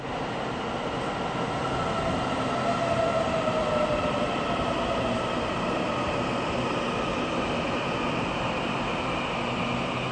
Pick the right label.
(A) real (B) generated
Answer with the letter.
A